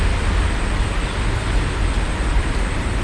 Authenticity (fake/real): real